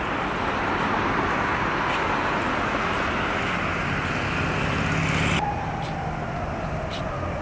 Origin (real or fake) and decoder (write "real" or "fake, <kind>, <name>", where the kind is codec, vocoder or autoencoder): real